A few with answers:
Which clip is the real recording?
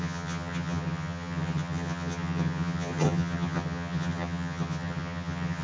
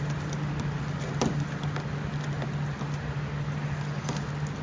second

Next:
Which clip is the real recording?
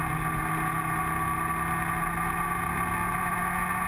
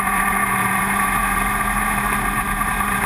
first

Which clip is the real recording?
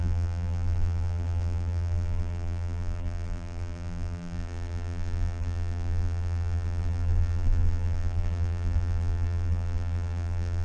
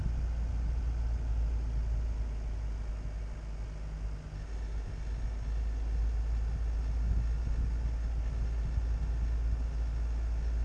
second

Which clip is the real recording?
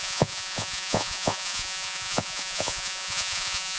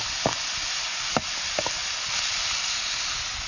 second